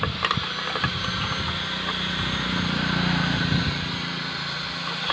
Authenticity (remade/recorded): recorded